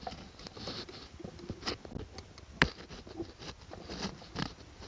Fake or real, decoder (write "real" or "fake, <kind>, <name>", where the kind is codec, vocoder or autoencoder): real